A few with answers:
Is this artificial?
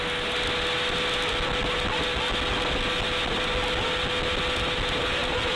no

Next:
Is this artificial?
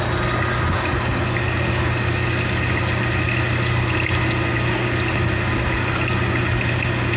no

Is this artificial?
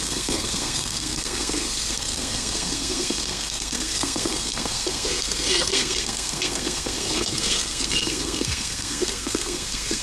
yes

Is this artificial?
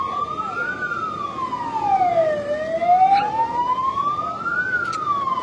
no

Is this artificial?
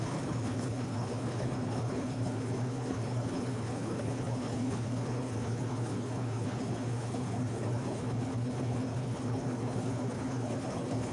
yes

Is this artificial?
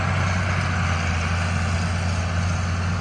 no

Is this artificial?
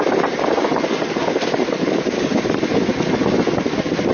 no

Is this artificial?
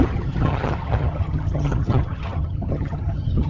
yes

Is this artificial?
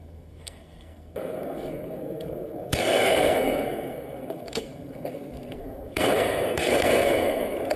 yes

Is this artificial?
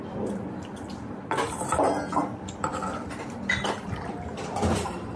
yes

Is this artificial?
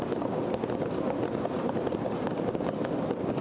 no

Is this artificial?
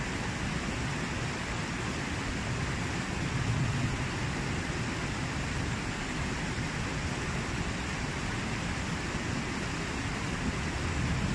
no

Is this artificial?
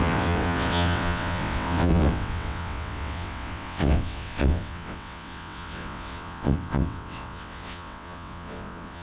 yes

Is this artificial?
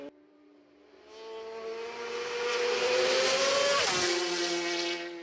no